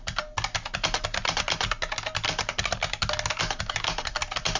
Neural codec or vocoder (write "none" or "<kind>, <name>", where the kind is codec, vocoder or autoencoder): none